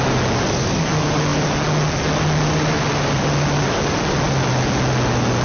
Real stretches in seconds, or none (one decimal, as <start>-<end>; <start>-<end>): 0.0-5.4